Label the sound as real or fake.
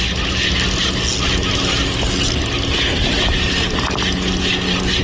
real